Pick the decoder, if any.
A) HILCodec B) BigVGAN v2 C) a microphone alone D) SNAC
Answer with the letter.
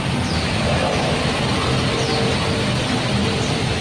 C